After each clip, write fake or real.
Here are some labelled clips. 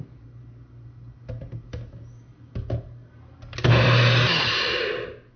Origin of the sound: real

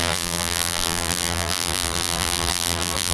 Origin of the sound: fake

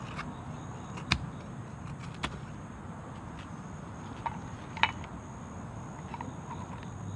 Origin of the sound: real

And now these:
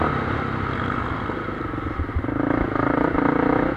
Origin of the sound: real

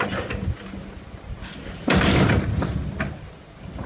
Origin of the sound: real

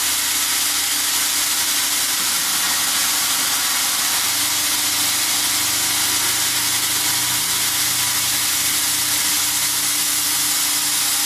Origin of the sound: real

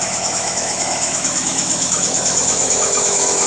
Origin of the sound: fake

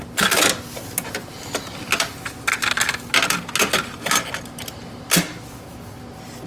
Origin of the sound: real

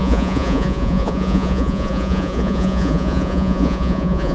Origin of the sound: fake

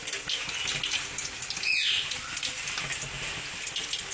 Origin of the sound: real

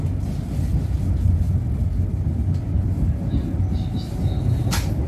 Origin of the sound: real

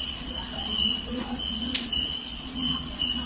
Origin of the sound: fake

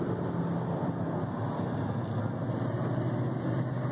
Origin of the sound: real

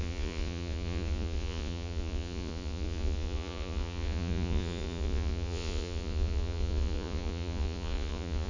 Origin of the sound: fake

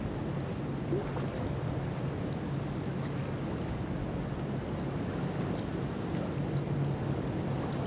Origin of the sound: real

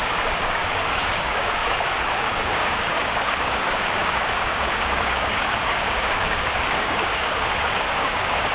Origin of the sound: fake